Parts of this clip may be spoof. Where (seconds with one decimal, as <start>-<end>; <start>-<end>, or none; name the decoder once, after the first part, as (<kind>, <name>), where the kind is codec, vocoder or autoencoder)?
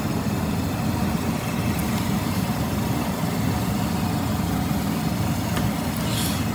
1.8-2.4 (vocoder, BigVGAN v2)